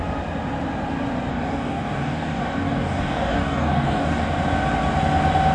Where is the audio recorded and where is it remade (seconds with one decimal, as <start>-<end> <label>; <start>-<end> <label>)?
0.0-1.3 recorded; 1.3-4.2 remade; 4.2-5.5 recorded